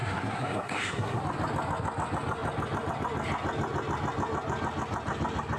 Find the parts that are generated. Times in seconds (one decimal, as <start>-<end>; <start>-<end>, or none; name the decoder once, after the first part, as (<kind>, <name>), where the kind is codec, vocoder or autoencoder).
0.0-1.2 (codec, SNAC)